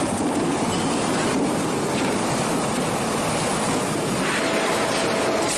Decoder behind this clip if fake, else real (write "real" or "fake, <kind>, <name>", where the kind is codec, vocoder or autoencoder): real